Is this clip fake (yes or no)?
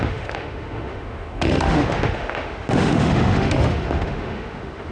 yes